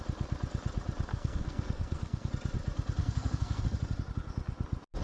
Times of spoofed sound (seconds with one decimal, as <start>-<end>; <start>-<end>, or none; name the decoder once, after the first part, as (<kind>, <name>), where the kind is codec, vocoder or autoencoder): 1.1-2.3 (codec, SNAC); 3.0-3.6